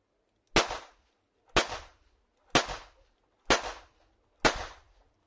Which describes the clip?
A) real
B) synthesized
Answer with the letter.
A